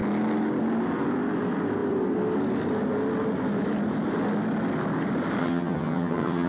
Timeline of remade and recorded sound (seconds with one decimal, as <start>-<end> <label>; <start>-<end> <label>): 0.0-5.4 recorded; 5.4-6.5 remade

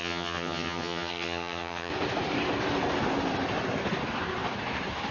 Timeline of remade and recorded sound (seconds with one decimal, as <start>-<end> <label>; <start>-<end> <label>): 0.0-1.9 remade; 1.9-5.1 recorded

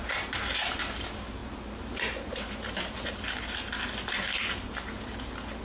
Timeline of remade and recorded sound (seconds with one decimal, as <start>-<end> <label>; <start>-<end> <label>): 0.0-5.6 recorded

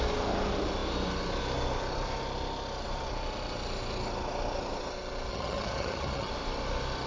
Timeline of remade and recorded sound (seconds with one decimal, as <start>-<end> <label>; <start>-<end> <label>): 0.0-5.3 recorded; 5.3-6.3 remade; 6.3-7.1 recorded